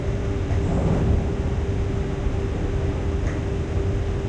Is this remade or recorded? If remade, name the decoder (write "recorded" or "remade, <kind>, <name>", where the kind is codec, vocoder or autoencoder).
recorded